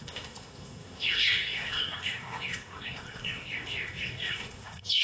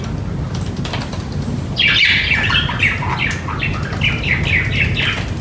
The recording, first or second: second